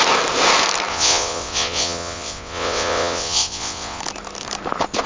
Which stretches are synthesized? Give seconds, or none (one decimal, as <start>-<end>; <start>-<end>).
0.9-4.0

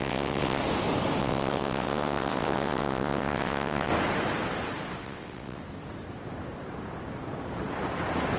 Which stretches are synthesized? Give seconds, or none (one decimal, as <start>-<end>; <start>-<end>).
0.0-0.6; 1.2-3.9; 5.0-5.6